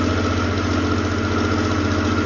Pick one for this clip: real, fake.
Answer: real